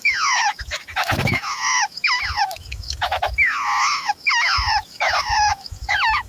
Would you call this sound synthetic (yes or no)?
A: yes